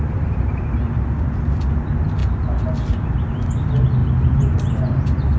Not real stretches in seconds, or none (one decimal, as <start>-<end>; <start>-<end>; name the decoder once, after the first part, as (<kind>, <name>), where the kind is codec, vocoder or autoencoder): 0.0-5.4 (vocoder, BigVGAN v2)